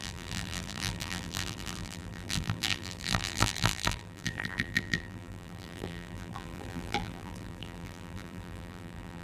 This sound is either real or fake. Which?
fake